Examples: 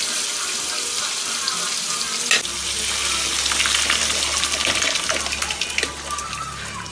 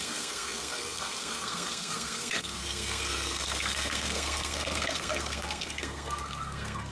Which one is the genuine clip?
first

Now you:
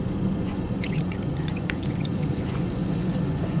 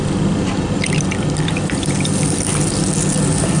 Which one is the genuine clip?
second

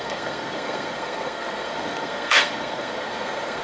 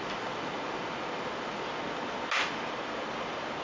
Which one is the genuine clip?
second